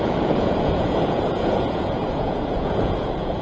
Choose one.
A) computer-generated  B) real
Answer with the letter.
A